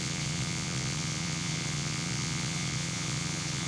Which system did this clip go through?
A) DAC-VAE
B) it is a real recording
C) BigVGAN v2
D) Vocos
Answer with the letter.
D